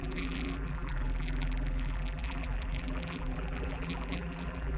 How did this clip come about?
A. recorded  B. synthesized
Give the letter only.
B